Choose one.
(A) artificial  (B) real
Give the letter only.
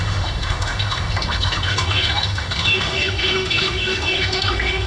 A